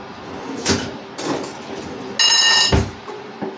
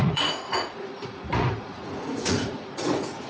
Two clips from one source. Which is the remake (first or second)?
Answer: second